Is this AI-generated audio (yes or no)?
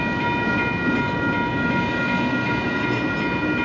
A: no